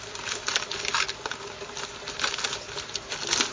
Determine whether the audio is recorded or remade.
recorded